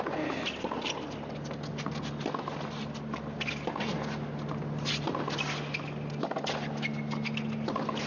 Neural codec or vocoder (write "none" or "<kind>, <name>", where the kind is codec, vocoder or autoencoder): none